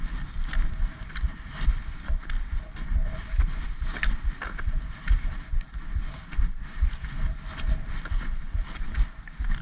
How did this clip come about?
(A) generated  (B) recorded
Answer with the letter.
B